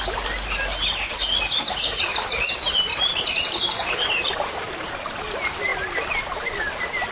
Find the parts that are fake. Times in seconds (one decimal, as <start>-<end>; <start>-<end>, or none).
2.9-5.2

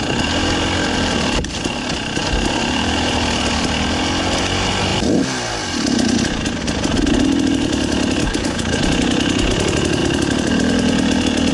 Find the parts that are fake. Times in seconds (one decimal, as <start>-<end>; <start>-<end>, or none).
8.2-8.8